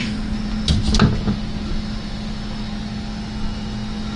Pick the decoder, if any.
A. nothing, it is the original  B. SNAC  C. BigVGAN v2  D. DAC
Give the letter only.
A